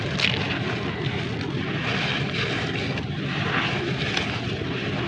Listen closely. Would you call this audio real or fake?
real